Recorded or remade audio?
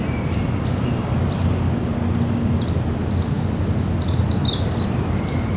recorded